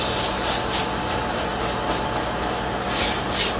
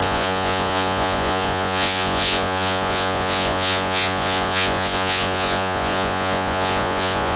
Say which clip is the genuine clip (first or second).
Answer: first